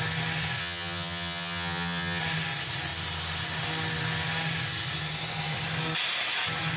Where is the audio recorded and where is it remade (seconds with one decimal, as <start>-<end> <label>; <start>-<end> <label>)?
0.0-0.6 recorded; 0.6-2.2 remade; 2.2-6.8 recorded